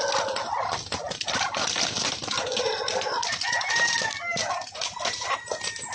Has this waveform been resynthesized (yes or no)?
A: no